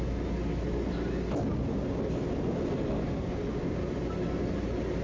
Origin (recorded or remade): recorded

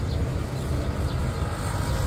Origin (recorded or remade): recorded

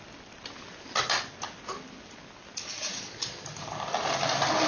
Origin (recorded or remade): recorded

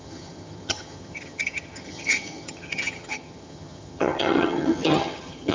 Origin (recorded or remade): remade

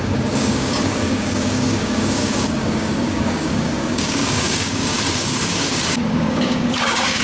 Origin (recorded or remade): remade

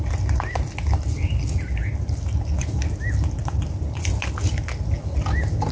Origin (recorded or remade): recorded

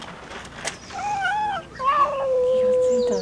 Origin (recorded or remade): recorded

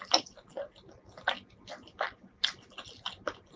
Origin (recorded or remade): recorded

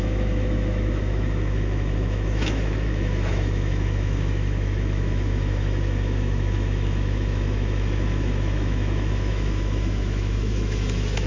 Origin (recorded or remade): remade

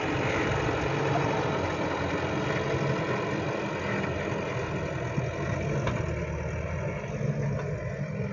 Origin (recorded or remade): recorded